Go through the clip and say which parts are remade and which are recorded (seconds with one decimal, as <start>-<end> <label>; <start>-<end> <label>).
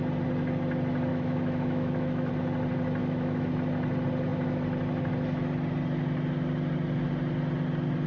0.0-1.1 recorded; 1.1-2.3 remade; 2.3-3.0 recorded; 3.0-3.5 remade; 3.5-8.1 recorded